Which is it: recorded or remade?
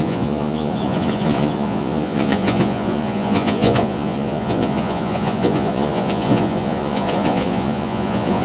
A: remade